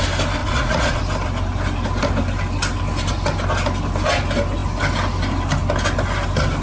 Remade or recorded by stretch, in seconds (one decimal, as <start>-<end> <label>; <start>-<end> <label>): 0.0-0.4 recorded; 0.4-1.0 remade; 1.0-6.6 recorded